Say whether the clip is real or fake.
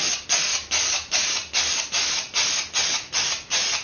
real